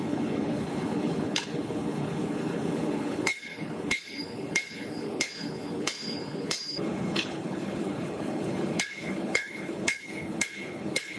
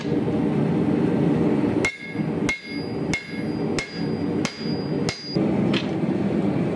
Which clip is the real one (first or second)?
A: second